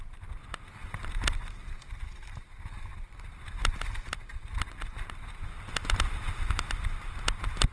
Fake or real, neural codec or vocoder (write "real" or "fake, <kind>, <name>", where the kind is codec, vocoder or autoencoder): real